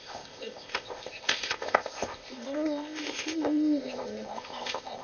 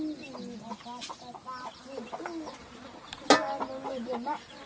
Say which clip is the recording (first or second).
second